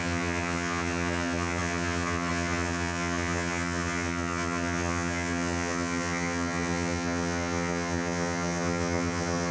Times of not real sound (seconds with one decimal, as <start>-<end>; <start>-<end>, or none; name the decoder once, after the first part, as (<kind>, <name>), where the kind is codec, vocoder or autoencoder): 0.0-9.5 (vocoder, HiFi-GAN)